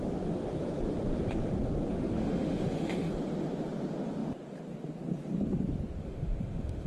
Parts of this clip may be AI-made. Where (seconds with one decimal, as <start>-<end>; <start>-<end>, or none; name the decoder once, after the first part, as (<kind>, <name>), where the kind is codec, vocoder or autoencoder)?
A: 1.9-3.1 (autoencoder, DAC-VAE); 6.0-6.9